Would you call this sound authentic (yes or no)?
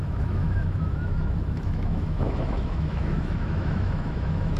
no